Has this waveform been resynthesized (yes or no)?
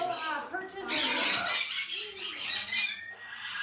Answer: no